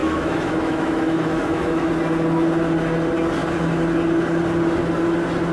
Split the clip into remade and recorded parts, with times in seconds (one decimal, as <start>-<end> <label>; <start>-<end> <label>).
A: 0.0-1.9 remade; 1.9-5.5 recorded